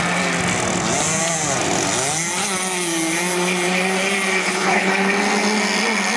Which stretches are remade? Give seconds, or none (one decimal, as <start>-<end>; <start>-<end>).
4.4-4.9